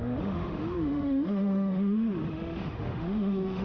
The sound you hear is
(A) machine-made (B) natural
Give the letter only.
A